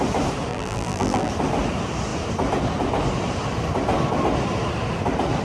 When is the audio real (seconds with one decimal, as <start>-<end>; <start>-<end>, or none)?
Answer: 0.0-0.5; 1.3-5.4